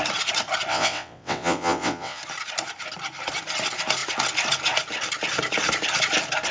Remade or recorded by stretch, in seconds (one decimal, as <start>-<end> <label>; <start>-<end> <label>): 0.0-0.7 recorded; 0.7-2.2 remade; 2.2-6.5 recorded